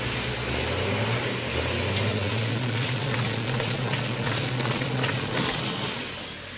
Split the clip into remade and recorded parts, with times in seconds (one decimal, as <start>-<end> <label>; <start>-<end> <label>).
0.0-2.1 recorded; 2.1-6.0 remade; 6.0-6.6 recorded